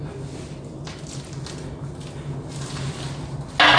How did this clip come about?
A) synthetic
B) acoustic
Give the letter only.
B